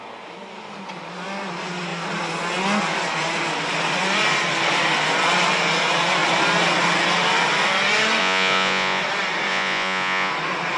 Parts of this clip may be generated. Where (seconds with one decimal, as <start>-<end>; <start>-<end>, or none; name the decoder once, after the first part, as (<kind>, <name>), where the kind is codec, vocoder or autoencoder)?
8.2-9.0 (vocoder, Vocos); 9.5-10.3